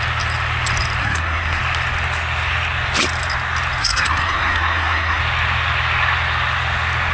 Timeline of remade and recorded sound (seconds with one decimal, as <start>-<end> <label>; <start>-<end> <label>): 0.0-1.0 recorded; 1.0-1.6 remade; 1.6-3.8 recorded; 3.8-5.2 remade; 5.2-7.1 recorded